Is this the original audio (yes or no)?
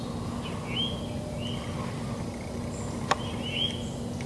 yes